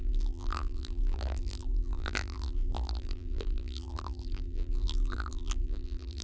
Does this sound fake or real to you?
fake